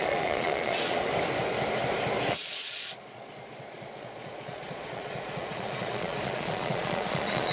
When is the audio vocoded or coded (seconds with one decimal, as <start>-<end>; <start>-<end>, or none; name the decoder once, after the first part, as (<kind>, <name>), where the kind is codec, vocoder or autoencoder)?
0.0-1.0 (vocoder, Vocos); 2.3-7.5